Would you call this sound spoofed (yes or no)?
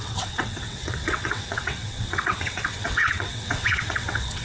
yes